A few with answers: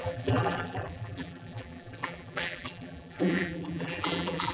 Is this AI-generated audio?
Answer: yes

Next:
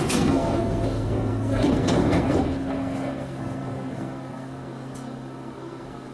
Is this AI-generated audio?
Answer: yes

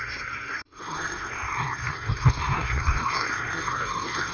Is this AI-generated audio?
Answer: yes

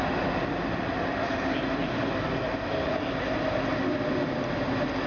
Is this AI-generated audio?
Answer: no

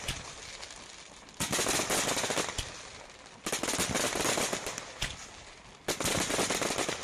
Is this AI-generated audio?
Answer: no